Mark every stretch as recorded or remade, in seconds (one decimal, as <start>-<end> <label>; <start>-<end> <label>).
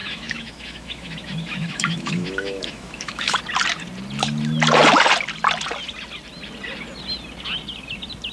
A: 0.0-3.4 remade; 3.4-8.3 recorded